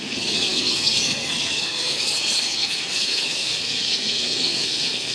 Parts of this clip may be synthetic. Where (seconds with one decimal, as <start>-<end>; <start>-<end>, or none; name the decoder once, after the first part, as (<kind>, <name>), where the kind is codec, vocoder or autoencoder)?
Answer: 0.0-5.1 (codec, SNAC)